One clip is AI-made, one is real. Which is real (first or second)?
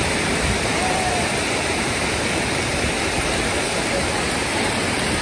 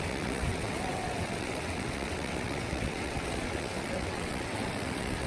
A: first